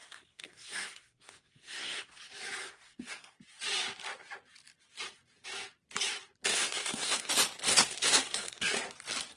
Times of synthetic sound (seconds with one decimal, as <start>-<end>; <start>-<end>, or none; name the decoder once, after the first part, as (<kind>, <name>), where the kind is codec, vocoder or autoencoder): 0.0-2.2 (codec, SNAC); 2.6-3.4; 6.5-7.3; 7.7-8.8